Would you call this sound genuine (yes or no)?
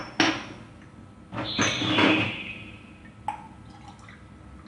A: yes